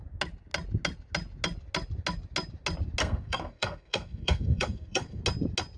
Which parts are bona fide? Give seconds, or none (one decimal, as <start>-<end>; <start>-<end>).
0.0-3.0; 5.2-5.8